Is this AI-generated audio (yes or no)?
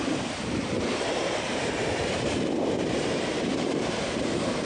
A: yes